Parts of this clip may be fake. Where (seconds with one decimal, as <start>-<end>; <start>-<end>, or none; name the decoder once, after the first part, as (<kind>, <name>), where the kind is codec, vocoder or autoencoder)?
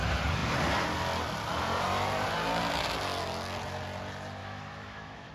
4.4-5.3 (autoencoder, DAC-VAE)